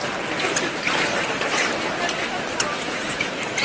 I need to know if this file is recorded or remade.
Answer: recorded